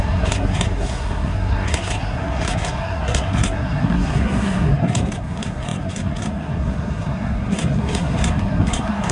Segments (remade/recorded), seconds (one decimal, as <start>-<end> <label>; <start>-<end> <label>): 0.0-9.1 remade